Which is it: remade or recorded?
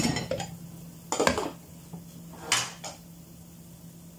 recorded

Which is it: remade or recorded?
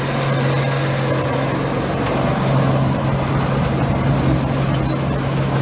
recorded